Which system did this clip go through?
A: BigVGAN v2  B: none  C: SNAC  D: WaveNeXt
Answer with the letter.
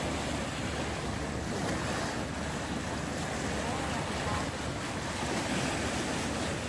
B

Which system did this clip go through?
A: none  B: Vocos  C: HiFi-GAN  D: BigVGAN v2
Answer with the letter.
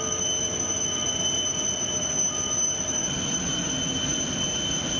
A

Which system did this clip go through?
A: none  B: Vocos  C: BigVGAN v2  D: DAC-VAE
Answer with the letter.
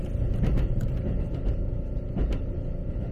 A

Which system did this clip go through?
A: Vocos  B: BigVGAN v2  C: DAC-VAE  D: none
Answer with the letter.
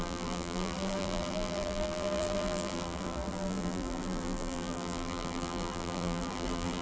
B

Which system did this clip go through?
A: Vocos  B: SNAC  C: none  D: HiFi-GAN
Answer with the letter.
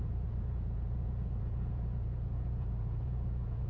A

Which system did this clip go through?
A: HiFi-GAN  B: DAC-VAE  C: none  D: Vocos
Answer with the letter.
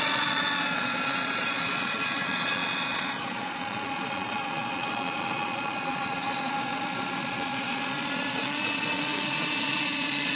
D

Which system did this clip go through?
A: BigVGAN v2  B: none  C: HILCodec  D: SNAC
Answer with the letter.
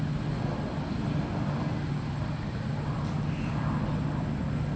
B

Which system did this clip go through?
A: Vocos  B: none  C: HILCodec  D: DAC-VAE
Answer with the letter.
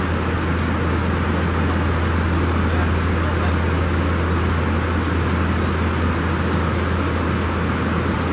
B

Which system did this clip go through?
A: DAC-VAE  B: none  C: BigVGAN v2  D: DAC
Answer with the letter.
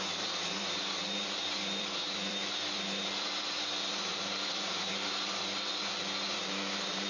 C